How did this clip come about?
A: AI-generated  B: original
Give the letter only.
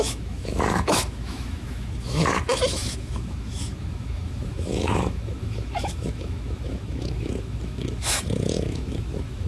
A